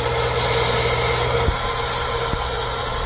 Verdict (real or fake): real